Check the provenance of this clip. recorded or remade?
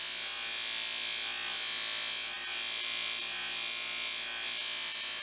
recorded